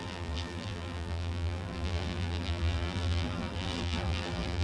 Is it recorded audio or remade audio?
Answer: remade